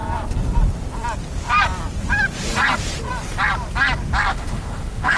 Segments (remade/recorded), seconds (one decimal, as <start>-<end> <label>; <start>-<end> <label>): 0.0-4.3 recorded; 4.3-5.2 remade